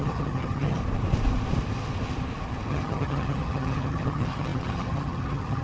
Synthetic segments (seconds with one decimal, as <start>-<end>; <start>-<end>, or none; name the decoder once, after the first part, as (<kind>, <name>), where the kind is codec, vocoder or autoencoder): 0.0-0.8 (vocoder, HiFi-GAN); 2.7-5.6